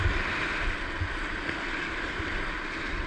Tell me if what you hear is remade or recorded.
recorded